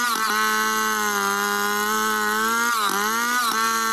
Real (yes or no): yes